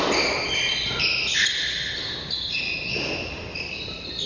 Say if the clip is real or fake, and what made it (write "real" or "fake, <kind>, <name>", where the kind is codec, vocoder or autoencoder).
real